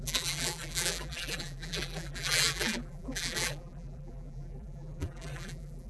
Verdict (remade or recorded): remade